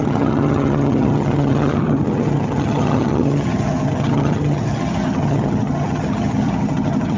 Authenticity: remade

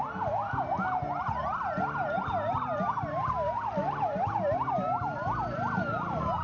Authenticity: recorded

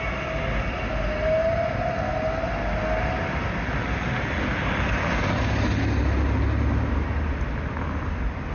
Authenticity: recorded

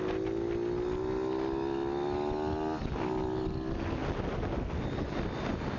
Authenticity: recorded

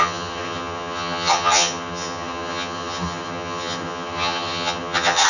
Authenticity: remade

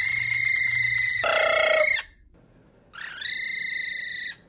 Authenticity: recorded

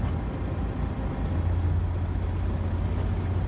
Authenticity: recorded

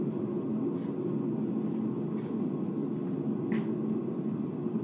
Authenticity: recorded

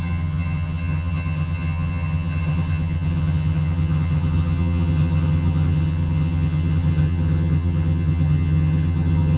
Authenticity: remade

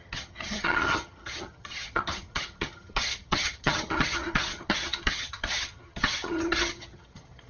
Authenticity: remade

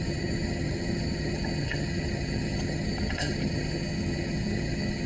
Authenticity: remade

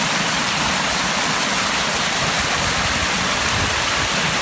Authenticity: recorded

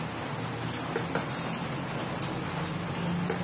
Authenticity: recorded